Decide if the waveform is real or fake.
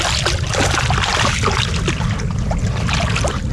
real